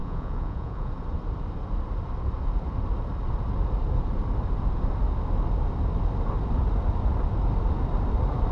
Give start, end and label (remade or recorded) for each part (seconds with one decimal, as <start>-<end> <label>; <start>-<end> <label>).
0.0-0.9 remade; 0.9-8.5 recorded